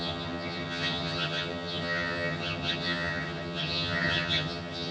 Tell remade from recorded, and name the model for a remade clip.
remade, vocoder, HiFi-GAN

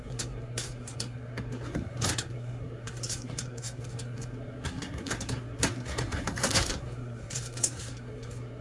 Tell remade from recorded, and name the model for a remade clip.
remade, codec, SNAC